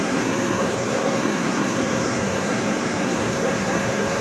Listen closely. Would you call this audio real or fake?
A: fake